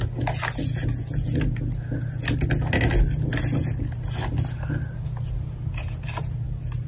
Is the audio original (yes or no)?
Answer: yes